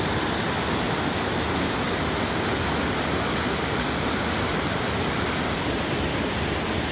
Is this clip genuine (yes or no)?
yes